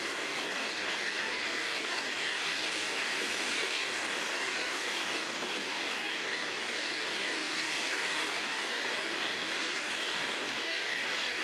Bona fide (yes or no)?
no